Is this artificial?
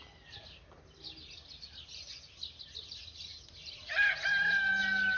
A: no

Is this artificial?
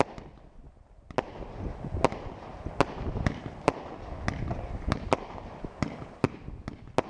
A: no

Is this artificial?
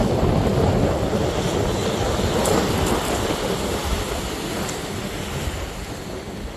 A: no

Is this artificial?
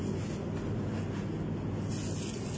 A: no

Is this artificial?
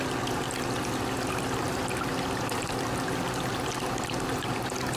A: no